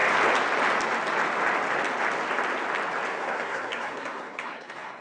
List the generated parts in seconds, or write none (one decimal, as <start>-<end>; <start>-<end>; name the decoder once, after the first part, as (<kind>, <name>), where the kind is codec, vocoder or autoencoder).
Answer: 3.1-5.0 (codec, SNAC)